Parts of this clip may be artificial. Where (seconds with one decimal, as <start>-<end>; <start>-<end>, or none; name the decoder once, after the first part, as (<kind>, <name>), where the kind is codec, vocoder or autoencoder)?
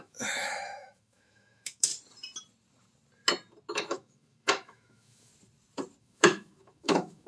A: 0.0-1.9 (autoencoder, DAC-VAE); 3.7-5.3; 6.0-7.3